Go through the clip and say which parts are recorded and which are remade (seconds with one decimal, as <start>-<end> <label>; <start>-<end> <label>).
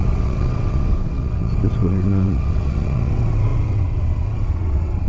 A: 0.0-5.1 remade